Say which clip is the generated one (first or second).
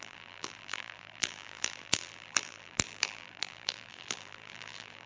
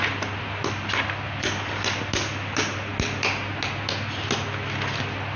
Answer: first